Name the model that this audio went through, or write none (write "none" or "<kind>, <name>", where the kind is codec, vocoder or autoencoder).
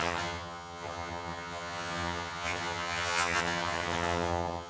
vocoder, HiFi-GAN